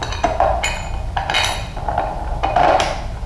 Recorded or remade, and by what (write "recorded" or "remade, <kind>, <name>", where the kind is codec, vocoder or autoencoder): recorded